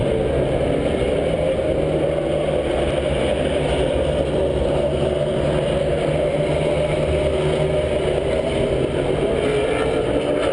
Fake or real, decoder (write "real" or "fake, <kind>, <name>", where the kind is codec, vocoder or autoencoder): real